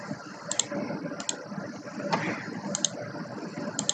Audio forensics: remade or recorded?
recorded